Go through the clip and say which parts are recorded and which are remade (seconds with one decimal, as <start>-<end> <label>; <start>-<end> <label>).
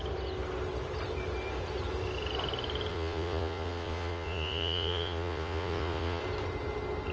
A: 0.0-2.9 recorded; 2.9-6.2 remade; 6.2-7.1 recorded